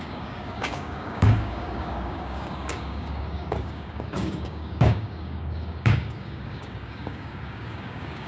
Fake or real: fake